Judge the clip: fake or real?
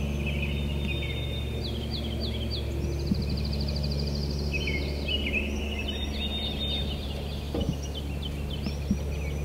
real